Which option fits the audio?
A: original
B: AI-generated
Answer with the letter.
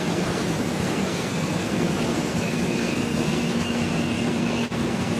B